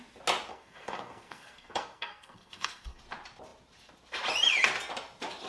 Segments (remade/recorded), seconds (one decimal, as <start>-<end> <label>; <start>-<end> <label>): 0.0-0.5 recorded; 0.5-3.0 remade; 3.0-5.5 recorded